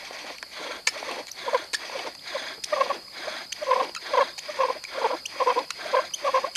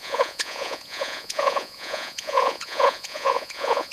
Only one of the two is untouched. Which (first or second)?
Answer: first